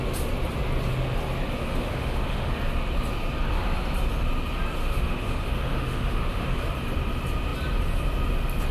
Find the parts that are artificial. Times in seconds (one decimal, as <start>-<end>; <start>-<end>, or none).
1.6-2.5; 4.8-6.6